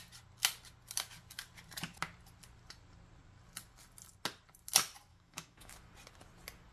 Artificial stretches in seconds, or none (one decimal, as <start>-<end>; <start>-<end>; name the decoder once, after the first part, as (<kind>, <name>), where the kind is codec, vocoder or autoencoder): 5.1-5.7 (autoencoder, DAC-VAE)